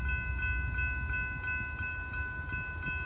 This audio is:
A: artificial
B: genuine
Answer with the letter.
B